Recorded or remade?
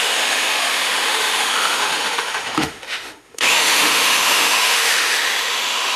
remade